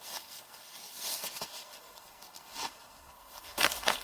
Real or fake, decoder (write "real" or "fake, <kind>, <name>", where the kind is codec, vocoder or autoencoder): fake, codec, SNAC